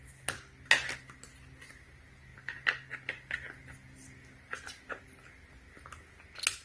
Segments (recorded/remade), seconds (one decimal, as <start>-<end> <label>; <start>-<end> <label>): 0.0-6.6 recorded